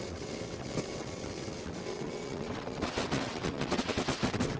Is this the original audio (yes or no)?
no